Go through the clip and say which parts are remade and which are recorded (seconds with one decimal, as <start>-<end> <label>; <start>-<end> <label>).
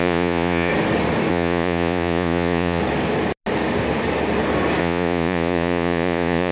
0.0-0.7 remade; 0.7-1.3 recorded; 1.3-2.8 remade; 2.8-4.8 recorded; 4.8-6.5 remade